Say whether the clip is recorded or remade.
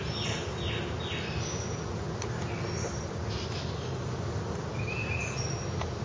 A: recorded